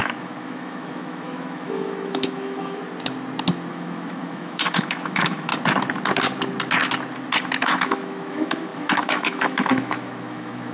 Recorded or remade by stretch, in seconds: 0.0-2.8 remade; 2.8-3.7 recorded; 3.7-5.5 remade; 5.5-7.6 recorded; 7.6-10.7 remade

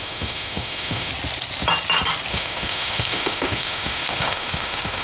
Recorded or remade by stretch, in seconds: 0.0-1.1 remade; 1.1-2.3 recorded; 2.3-5.0 remade

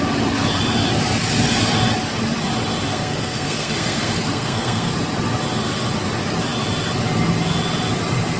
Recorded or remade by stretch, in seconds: 0.0-2.9 recorded; 2.9-4.9 remade; 4.9-8.4 recorded

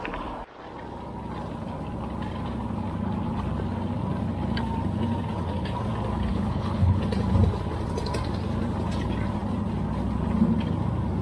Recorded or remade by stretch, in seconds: 0.0-6.3 recorded; 6.3-7.0 remade; 7.0-11.2 recorded

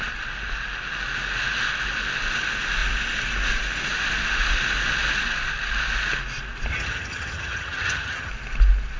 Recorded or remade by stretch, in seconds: 0.0-6.7 recorded; 6.7-8.3 remade; 8.3-9.0 recorded

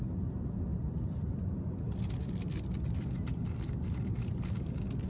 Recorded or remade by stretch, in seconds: 0.0-0.7 recorded; 0.7-1.7 remade; 1.7-3.3 recorded; 3.3-4.0 remade; 4.0-5.1 recorded

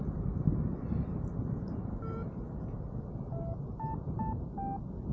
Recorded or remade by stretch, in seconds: 0.0-5.1 recorded